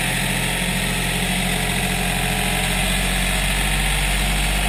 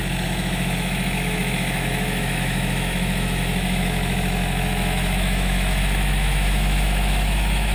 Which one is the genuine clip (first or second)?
first